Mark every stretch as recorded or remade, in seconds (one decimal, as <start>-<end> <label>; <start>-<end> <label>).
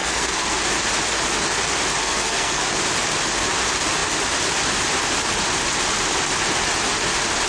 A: 0.0-0.6 remade; 0.6-2.0 recorded; 2.0-2.6 remade; 2.6-7.5 recorded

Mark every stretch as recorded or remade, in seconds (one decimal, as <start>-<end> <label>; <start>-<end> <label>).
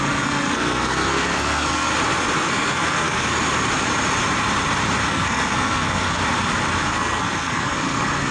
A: 0.0-1.9 remade; 1.9-2.5 recorded; 2.5-3.3 remade; 3.3-5.1 recorded; 5.1-6.2 remade; 6.2-6.9 recorded; 6.9-8.3 remade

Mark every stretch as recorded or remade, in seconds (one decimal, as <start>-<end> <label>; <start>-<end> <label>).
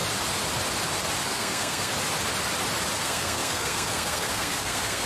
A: 0.0-1.2 recorded; 1.2-1.9 remade; 1.9-3.0 recorded; 3.0-5.1 remade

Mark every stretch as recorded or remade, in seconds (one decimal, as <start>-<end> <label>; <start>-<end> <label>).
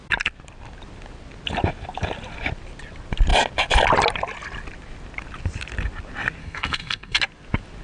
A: 0.0-6.4 recorded; 6.4-7.2 remade; 7.2-7.8 recorded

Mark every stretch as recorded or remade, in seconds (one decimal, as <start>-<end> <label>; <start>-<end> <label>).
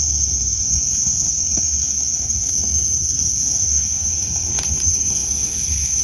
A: 0.0-6.0 remade